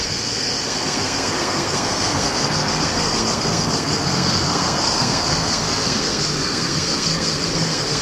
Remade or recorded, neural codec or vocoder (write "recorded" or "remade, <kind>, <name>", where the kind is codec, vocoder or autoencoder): remade, codec, SNAC